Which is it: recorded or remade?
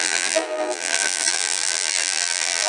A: remade